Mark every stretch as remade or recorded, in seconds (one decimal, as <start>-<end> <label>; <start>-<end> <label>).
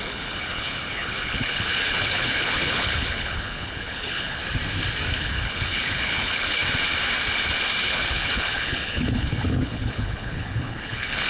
0.0-4.4 remade; 4.4-5.2 recorded; 5.2-6.6 remade; 6.6-7.8 recorded; 7.8-11.3 remade